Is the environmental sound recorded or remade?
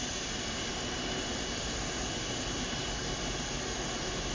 recorded